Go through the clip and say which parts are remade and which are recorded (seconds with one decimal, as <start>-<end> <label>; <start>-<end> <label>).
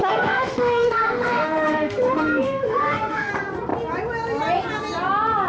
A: 0.0-3.3 remade; 3.3-5.5 recorded